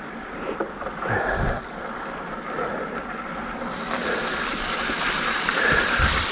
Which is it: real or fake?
real